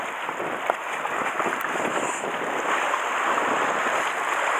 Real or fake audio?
real